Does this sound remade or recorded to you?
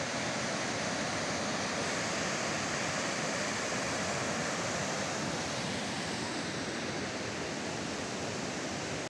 recorded